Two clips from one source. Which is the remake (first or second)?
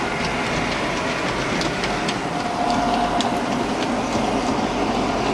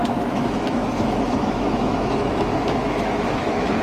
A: second